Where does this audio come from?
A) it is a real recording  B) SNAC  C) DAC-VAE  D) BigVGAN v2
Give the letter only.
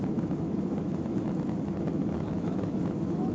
C